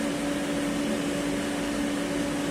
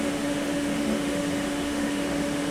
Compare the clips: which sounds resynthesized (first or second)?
second